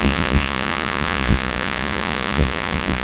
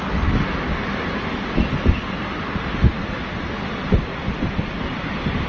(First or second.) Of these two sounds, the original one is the second